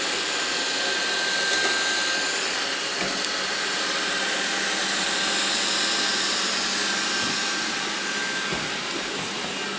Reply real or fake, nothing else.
real